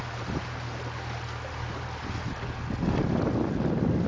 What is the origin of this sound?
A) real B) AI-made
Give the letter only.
A